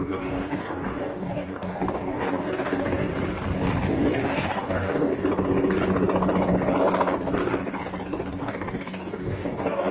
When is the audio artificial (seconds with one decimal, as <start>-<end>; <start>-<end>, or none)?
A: 0.0-3.1; 3.9-5.1; 8.4-9.9